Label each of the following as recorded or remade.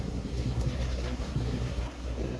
remade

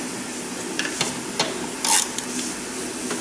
recorded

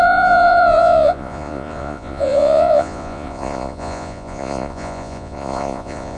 remade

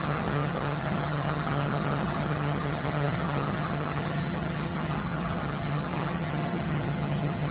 remade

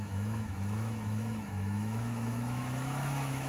remade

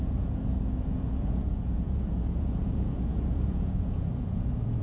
remade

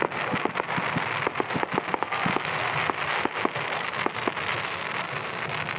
recorded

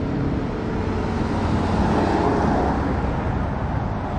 recorded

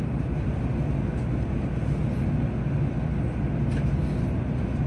recorded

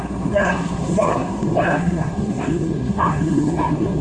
remade